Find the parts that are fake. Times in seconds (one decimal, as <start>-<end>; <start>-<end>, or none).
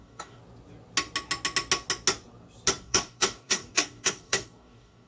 0.0-0.4; 2.8-5.1